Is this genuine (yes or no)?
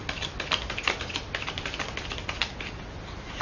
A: yes